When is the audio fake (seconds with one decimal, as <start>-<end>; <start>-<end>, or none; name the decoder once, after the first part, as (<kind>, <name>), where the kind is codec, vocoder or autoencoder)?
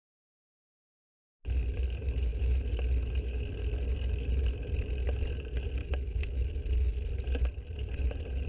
5.8-6.6 (autoencoder, DAC-VAE)